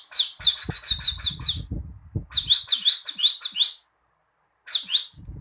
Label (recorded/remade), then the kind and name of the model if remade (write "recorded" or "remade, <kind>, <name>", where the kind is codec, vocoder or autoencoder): recorded